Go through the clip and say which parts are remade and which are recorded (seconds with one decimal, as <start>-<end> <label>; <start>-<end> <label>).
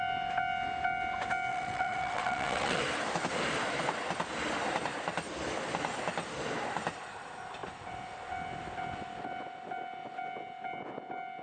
0.0-1.5 recorded; 1.5-2.8 remade; 2.8-11.4 recorded